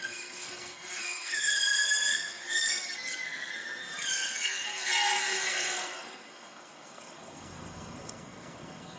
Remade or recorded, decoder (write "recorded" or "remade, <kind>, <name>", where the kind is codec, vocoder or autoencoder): remade, codec, SNAC